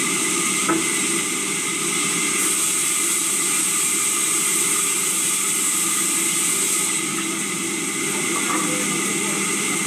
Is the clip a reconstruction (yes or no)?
no